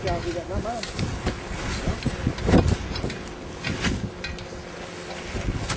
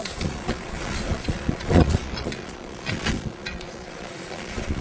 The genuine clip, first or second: first